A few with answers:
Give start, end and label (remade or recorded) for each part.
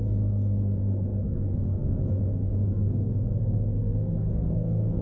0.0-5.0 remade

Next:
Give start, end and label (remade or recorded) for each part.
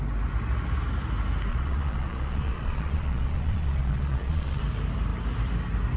0.0-1.5 recorded; 1.5-4.6 remade; 4.6-6.0 recorded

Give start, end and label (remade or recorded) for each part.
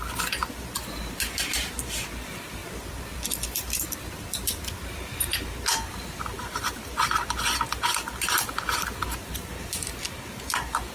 0.0-0.4 recorded; 0.4-1.0 remade; 1.0-2.6 recorded; 2.6-5.4 remade; 5.4-10.9 recorded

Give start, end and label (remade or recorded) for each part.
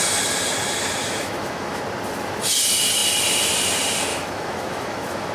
0.0-1.0 recorded; 1.0-1.8 remade; 1.8-4.1 recorded; 4.1-5.3 remade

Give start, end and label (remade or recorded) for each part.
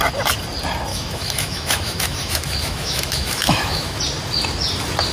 0.0-0.9 recorded; 0.9-4.0 remade; 4.0-5.1 recorded